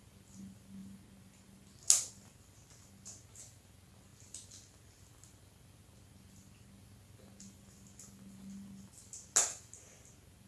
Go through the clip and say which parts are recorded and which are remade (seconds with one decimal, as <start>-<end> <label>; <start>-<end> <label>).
0.0-10.5 recorded